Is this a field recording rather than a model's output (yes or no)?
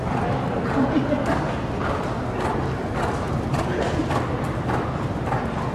yes